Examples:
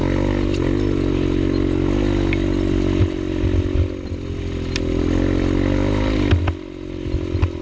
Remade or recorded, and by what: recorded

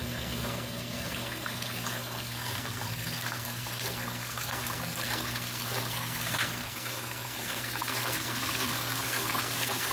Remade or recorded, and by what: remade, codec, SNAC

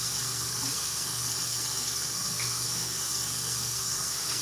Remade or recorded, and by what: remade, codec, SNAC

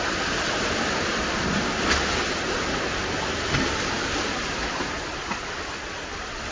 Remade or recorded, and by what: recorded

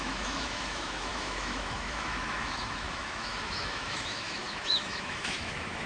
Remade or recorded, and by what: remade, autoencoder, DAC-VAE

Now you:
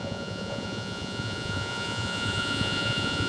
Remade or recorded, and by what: remade, vocoder, Vocos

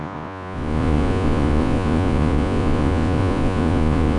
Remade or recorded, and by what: remade, vocoder, Vocos